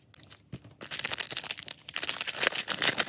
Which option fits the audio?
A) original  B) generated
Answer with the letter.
A